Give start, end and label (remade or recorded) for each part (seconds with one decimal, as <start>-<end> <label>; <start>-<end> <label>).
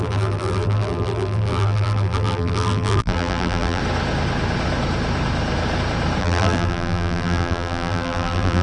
0.0-3.8 remade; 3.8-6.2 recorded; 6.2-8.6 remade